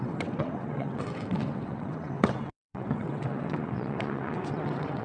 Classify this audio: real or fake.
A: fake